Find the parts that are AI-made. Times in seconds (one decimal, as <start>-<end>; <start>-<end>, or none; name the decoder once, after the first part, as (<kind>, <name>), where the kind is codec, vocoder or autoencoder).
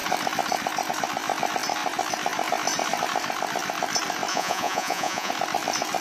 4.3-5.3 (vocoder, Vocos)